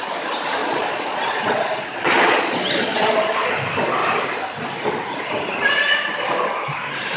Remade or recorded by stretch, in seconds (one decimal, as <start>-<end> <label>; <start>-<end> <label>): 0.0-0.6 recorded; 0.6-3.5 remade; 3.5-7.2 recorded